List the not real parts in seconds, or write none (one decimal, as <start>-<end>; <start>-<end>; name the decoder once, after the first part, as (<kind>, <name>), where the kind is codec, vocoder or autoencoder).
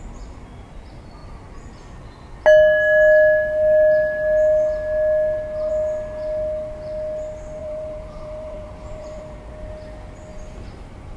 7.6-9.5 (vocoder, BigVGAN v2); 10.3-11.2